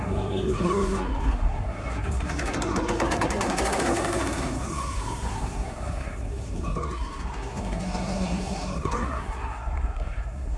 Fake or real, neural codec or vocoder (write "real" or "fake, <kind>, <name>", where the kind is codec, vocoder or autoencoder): fake, codec, SNAC